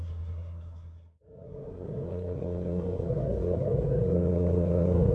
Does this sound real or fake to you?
fake